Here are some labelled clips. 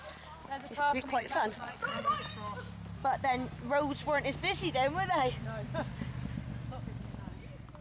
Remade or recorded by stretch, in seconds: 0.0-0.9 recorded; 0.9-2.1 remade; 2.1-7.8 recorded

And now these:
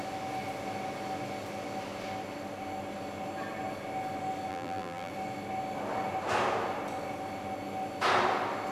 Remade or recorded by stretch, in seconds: 0.0-4.5 recorded; 4.5-5.1 remade; 5.1-8.7 recorded

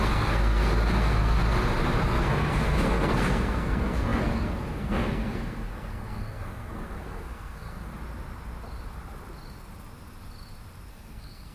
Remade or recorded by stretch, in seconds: 0.0-1.4 remade; 1.4-2.0 recorded; 2.0-7.9 remade; 7.9-10.9 recorded; 10.9-11.5 remade

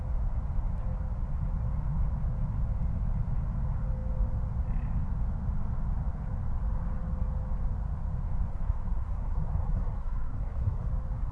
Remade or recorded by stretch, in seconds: 0.0-8.5 recorded; 8.5-10.9 remade; 10.9-11.3 recorded

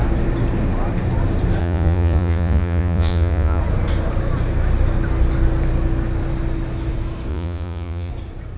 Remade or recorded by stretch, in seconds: 0.0-1.6 recorded; 1.6-3.6 remade; 3.6-7.3 recorded; 7.3-8.1 remade; 8.1-8.6 recorded

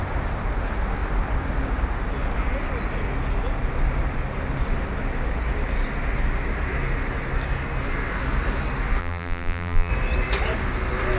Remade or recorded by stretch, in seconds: 0.0-9.0 recorded; 9.0-9.9 remade; 9.9-11.2 recorded